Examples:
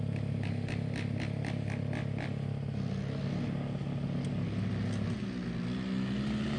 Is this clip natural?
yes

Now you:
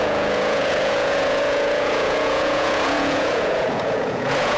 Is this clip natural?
no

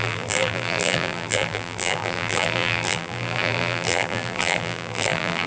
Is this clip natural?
no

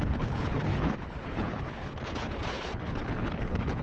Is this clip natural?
no